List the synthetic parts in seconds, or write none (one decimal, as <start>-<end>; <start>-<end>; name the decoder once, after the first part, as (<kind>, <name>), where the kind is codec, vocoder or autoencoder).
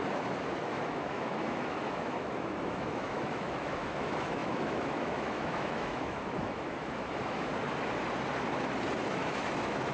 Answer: 0.0-7.5 (autoencoder, DAC-VAE); 9.1-9.9